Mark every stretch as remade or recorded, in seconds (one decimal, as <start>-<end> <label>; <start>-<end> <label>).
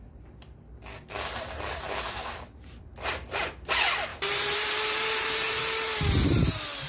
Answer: 0.0-4.1 recorded; 4.1-5.6 remade; 5.6-6.9 recorded